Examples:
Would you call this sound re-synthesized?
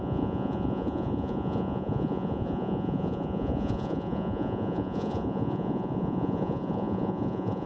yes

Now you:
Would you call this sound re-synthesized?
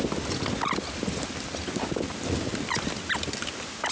no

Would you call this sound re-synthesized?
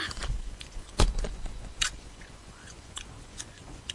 yes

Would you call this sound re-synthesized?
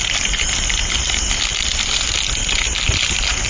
no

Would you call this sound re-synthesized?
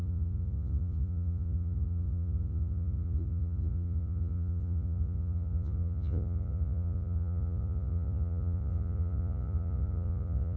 yes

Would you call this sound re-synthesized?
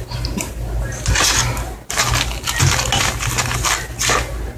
no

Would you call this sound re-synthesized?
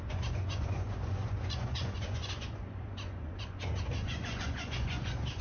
yes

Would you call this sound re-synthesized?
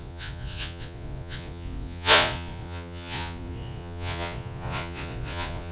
yes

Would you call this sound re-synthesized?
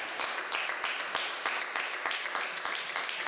no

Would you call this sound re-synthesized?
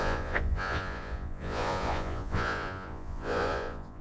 yes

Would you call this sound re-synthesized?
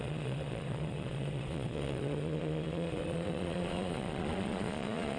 yes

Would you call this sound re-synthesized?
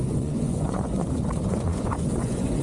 yes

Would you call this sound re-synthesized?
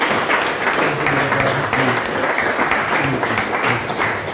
no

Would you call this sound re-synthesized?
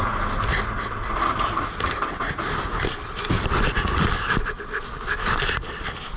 no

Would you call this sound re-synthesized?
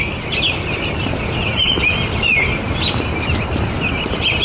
no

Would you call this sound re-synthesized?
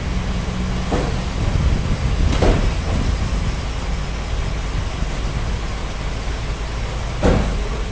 no